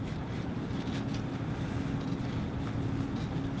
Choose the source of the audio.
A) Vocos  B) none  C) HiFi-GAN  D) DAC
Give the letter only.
B